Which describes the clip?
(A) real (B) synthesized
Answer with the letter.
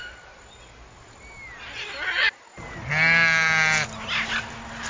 A